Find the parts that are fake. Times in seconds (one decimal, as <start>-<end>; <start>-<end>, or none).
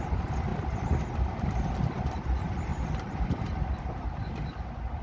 0.5-1.7; 2.7-3.8